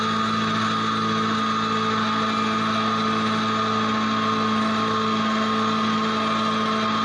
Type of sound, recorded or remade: recorded